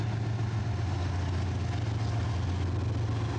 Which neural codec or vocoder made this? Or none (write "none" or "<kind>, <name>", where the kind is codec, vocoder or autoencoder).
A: none